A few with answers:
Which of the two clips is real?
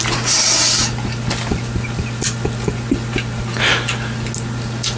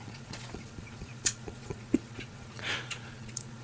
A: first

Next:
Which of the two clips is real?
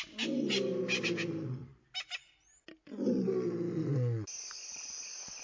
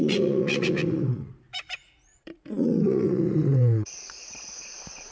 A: first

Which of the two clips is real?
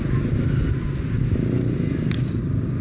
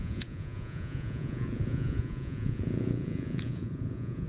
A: first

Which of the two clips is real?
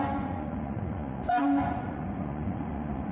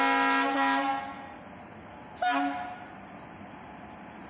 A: second